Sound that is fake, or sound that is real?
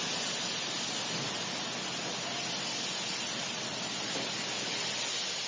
real